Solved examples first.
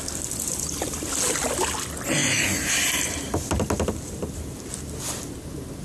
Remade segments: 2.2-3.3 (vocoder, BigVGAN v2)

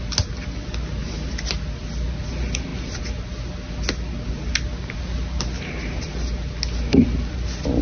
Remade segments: 1.0-1.6 (vocoder, BigVGAN v2)

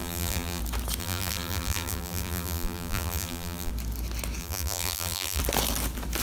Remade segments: 0.0-0.6 (vocoder, BigVGAN v2); 1.0-3.7; 4.4-5.4

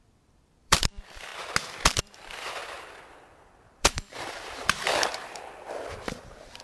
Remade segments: 0.0-1.3 (vocoder, BigVGAN v2); 2.0-6.6

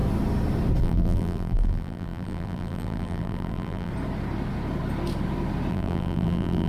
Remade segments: 0.8-3.9 (vocoder, BigVGAN v2); 5.7-6.7